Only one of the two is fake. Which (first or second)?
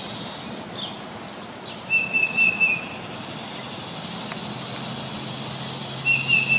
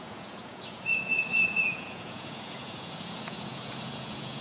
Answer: second